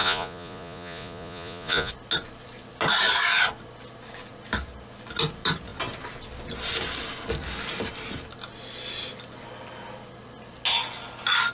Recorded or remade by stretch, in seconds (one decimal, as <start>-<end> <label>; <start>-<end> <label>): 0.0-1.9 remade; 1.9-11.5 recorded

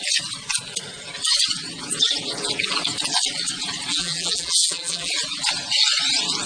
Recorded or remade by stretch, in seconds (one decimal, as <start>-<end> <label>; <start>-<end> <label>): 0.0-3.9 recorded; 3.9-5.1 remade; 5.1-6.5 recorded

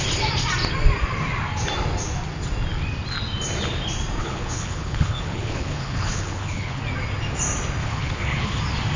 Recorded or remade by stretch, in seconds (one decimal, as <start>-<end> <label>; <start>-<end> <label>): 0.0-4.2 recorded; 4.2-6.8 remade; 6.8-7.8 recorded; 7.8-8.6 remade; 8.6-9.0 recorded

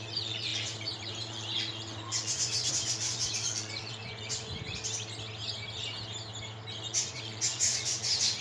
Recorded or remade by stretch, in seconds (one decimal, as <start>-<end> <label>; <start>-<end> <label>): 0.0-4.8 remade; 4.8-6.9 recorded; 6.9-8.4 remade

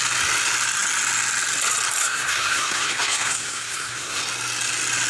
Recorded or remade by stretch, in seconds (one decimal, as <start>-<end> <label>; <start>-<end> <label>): 0.0-2.0 recorded; 2.0-4.2 remade; 4.2-5.1 recorded

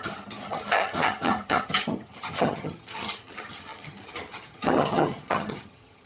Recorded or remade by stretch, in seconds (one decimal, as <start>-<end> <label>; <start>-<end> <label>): 0.0-6.1 remade

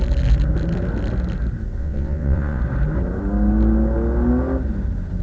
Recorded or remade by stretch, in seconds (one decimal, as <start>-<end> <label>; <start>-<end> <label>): 0.0-1.8 recorded; 1.8-2.6 remade; 2.6-5.2 recorded

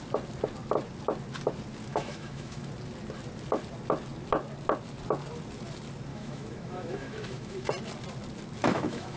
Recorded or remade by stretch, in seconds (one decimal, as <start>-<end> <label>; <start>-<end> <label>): 0.0-1.9 recorded; 1.9-2.7 remade; 2.7-6.1 recorded; 6.1-7.7 remade; 7.7-8.6 recorded; 8.6-9.2 remade